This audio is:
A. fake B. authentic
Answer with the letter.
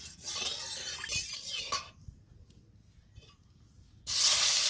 B